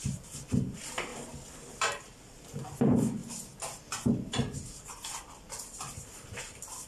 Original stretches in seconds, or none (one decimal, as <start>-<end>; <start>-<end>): 1.1-1.7; 3.2-4.4